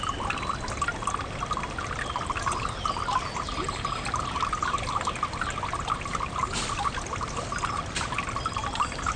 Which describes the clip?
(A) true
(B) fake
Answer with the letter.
A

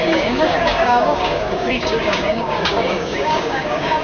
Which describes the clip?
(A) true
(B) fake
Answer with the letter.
B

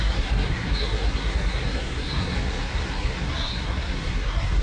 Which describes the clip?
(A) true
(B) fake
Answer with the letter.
B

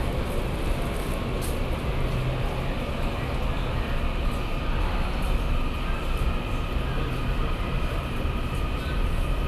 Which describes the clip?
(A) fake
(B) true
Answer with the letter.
B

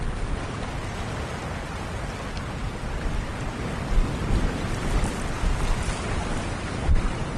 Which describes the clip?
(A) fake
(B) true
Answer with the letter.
B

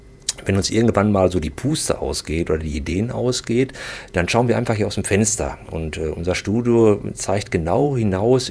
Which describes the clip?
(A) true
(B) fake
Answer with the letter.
B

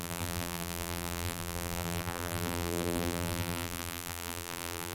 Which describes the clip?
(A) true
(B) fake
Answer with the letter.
B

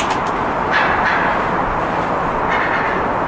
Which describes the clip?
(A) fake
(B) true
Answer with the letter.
B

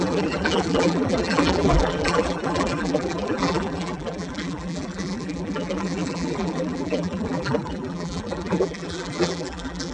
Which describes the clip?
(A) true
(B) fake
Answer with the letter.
B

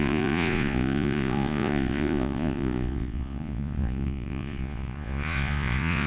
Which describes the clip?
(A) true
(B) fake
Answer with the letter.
B